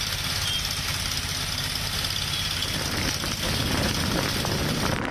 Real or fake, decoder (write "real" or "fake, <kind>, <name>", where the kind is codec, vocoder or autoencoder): real